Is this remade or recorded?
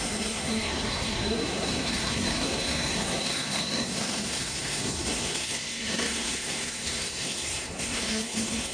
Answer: remade